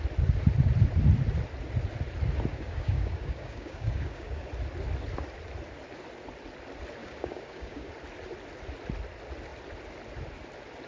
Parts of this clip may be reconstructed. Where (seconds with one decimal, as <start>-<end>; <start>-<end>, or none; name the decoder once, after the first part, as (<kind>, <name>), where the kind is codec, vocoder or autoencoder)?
2.5-4.5 (codec, DAC); 7.0-7.9